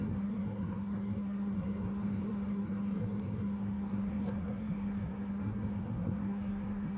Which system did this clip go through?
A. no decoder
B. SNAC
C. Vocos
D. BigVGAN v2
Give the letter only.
B